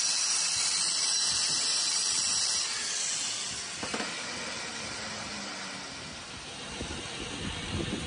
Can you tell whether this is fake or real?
real